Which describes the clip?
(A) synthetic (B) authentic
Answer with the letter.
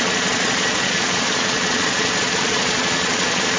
A